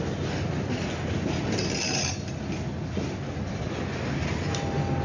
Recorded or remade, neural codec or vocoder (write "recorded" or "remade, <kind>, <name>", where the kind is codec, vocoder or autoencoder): recorded